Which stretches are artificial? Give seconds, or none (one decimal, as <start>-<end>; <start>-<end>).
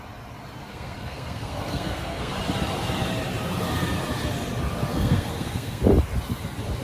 0.7-2.3; 4.9-5.8